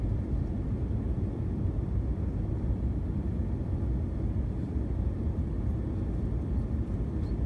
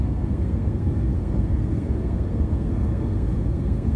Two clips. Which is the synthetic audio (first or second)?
second